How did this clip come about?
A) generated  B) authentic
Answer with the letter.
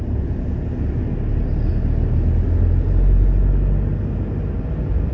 B